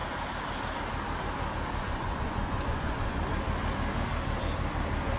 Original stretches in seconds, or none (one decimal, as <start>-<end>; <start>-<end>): 0.0-1.8; 3.2-5.2